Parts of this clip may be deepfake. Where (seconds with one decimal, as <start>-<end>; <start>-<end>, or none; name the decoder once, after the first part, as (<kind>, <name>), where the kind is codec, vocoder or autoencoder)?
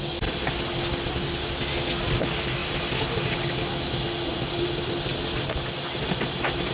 none